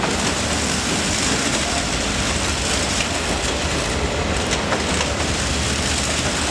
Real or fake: real